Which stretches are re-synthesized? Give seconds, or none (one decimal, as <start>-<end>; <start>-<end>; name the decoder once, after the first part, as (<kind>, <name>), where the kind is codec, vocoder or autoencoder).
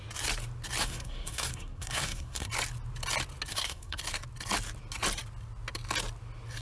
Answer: 0.8-2.5 (codec, SNAC); 3.5-4.0